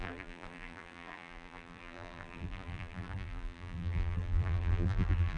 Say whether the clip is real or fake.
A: fake